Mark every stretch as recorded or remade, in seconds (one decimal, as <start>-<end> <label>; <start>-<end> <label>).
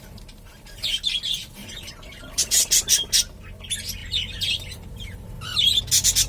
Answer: 0.0-1.6 recorded; 1.6-2.2 remade; 2.2-4.0 recorded; 4.0-5.8 remade; 5.8-6.3 recorded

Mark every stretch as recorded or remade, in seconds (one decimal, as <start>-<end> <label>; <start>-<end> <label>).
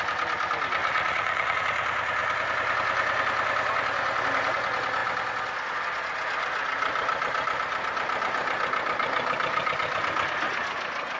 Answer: 0.0-0.8 recorded; 0.8-1.6 remade; 1.6-11.2 recorded